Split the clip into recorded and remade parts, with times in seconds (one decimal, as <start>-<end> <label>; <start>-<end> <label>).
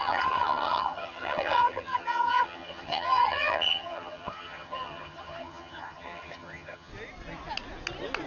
0.0-6.9 remade; 6.9-8.3 recorded